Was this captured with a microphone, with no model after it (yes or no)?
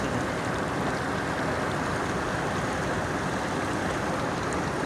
yes